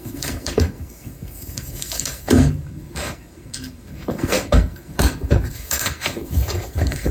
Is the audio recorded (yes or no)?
no